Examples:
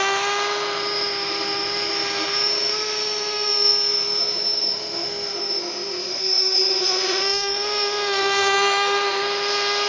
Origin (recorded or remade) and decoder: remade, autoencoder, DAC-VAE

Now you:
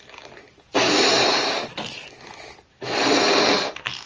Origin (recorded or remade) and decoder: recorded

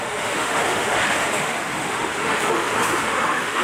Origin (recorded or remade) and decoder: remade, autoencoder, DAC-VAE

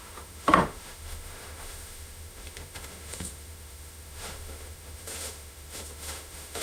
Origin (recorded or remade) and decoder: remade, autoencoder, DAC-VAE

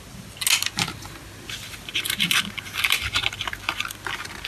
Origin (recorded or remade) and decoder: recorded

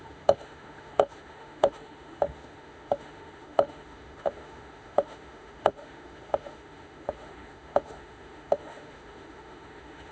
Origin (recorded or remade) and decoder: remade, autoencoder, DAC-VAE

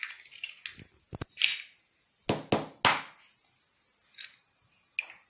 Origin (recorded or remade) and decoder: recorded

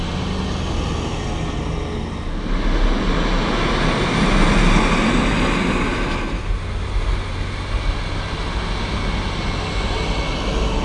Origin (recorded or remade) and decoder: recorded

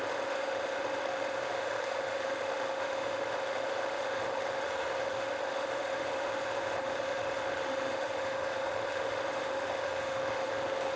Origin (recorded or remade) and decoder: remade, autoencoder, DAC-VAE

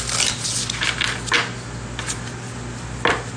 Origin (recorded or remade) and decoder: recorded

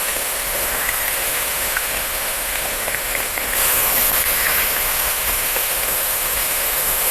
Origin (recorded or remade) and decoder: remade, autoencoder, DAC-VAE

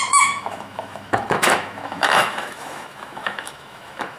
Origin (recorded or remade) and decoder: remade, autoencoder, DAC-VAE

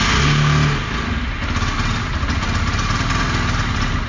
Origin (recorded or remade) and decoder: recorded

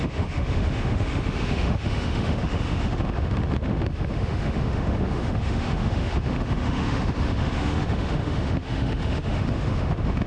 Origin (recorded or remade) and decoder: remade, autoencoder, DAC-VAE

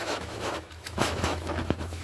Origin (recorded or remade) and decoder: remade, autoencoder, DAC-VAE